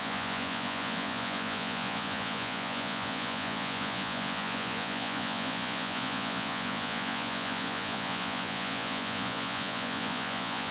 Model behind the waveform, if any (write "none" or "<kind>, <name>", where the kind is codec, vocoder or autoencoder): vocoder, Vocos